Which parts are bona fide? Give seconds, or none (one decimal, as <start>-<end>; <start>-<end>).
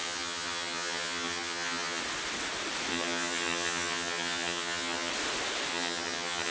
2.0-2.9; 5.1-5.7